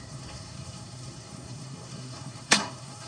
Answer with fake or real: fake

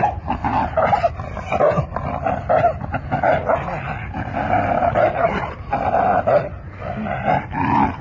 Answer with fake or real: real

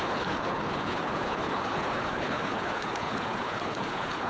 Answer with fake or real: fake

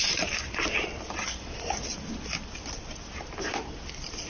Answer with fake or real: real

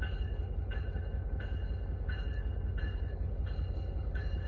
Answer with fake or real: fake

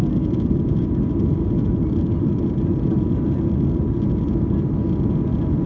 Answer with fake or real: real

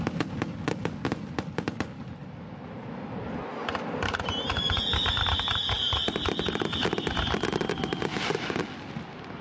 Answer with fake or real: real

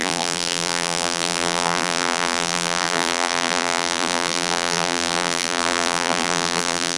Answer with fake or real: fake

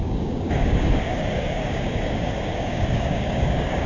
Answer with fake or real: fake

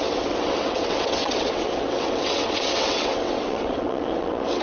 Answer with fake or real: fake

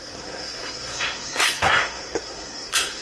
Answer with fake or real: fake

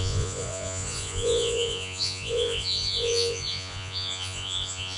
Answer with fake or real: fake